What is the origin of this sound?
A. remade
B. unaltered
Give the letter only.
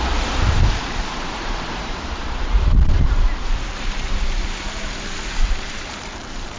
A